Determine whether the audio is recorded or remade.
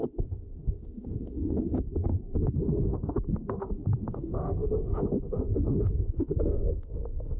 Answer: remade